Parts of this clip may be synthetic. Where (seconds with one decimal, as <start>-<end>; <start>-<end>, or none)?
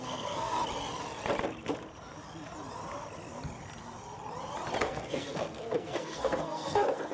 0.0-0.5; 4.8-7.1